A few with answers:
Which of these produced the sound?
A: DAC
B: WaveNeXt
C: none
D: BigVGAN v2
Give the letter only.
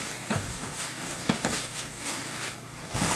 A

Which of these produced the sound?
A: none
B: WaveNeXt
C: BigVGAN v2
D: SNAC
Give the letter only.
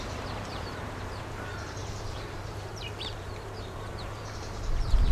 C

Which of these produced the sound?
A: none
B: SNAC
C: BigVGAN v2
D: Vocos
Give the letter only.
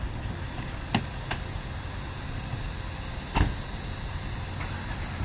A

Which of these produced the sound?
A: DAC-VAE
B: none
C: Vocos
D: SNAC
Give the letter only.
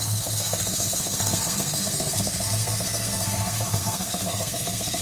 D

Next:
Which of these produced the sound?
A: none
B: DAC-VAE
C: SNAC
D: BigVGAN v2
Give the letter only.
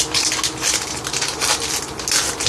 A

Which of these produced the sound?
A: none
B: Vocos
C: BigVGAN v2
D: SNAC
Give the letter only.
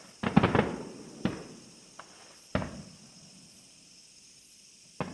A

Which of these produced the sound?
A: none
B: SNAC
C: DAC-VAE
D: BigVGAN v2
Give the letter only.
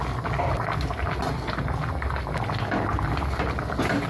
A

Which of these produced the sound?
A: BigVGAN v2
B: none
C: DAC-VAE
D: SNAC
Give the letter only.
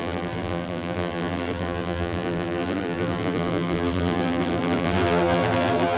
A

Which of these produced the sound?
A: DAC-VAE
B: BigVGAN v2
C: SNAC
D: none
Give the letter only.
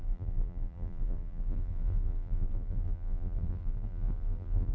B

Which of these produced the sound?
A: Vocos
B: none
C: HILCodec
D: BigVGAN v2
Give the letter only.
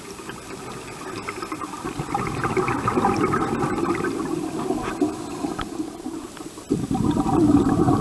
B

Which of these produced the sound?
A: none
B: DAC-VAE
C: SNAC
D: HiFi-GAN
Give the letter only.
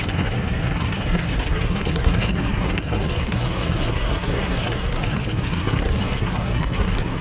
C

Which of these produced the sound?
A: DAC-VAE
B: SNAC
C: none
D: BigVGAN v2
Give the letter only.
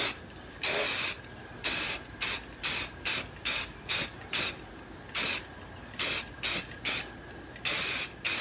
C